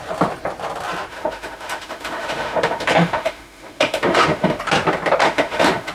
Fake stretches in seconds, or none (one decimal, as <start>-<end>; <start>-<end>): 1.1-4.6; 5.2-5.9